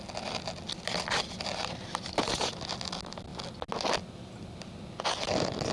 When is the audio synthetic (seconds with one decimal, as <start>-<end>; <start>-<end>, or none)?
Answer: none

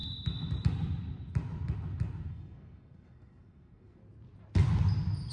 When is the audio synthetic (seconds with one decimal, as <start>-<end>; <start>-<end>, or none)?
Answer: 2.3-4.0